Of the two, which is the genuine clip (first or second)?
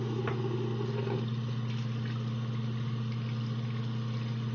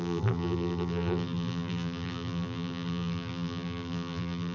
first